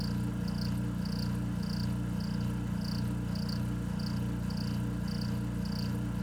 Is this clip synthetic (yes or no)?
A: no